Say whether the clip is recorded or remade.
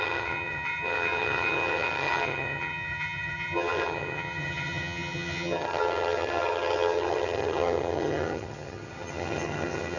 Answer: remade